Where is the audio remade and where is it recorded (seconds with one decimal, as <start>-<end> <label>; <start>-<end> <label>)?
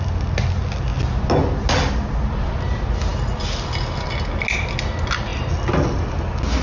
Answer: 0.0-6.6 recorded